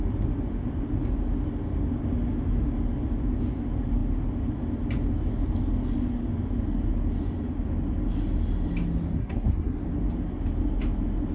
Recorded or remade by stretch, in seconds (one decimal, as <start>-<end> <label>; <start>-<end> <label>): 0.0-9.2 recorded; 9.2-9.8 remade; 9.8-11.3 recorded